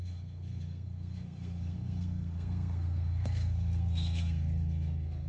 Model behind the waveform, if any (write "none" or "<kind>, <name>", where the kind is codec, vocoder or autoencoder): codec, SNAC